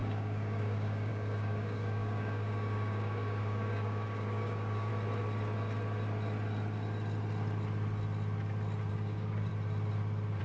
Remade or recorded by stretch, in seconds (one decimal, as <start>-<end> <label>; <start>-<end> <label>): 0.0-4.9 remade; 4.9-8.9 recorded; 8.9-9.5 remade; 9.5-10.4 recorded